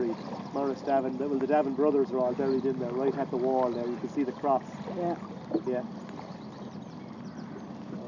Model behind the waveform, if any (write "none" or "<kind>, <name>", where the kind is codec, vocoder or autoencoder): none